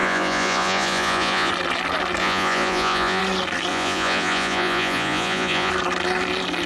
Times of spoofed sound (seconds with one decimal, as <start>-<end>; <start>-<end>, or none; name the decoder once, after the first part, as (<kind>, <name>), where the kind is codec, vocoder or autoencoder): 0.0-1.5 (vocoder, Vocos); 2.2-3.2; 3.7-5.7

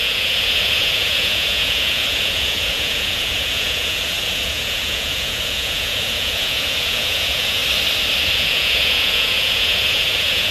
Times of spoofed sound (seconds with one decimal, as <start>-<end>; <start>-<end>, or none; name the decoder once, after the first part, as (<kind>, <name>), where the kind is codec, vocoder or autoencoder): 0.0-7.6 (vocoder, Vocos); 8.3-10.5

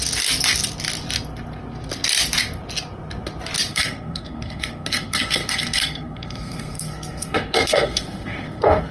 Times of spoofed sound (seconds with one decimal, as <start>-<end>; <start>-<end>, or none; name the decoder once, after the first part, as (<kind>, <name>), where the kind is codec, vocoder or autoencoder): 3.7-8.9 (codec, SNAC)

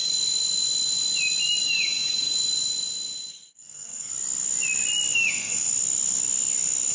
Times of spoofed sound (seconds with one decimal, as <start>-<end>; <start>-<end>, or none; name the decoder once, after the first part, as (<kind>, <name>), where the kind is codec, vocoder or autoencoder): 3.3-4.1 (codec, SNAC); 5.3-5.7

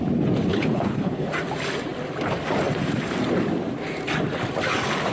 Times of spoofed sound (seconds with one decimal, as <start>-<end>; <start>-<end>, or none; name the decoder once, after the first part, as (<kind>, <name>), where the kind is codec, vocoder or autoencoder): 0.5-1.2 (codec, HILCodec)